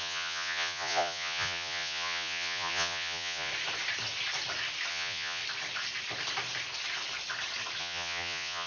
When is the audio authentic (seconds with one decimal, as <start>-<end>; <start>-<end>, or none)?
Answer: 3.5-4.9; 5.4-7.8